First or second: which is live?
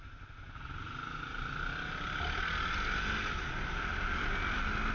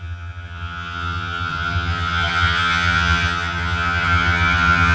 first